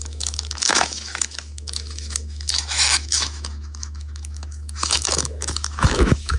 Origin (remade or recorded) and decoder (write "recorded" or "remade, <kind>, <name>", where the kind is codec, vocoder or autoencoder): remade, autoencoder, DAC-VAE